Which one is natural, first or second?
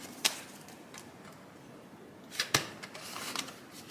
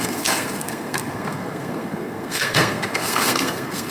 first